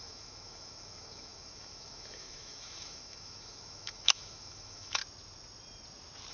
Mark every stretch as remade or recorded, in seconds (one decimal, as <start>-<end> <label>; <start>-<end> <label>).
0.0-5.0 remade; 5.0-6.3 recorded